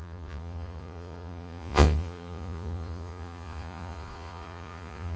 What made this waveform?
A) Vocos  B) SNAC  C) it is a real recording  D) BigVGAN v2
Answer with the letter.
A